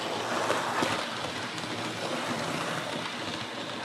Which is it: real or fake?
real